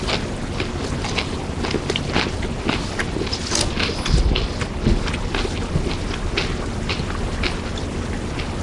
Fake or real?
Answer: real